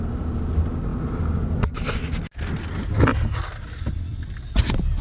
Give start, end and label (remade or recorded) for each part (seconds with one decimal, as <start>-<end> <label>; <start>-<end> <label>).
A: 0.0-5.0 recorded